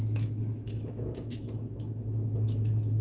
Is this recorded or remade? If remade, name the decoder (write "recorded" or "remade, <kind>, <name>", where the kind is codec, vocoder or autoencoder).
remade, autoencoder, DAC-VAE